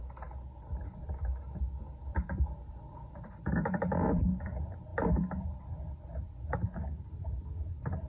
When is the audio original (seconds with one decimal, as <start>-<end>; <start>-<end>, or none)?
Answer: 0.0-2.1; 4.4-8.1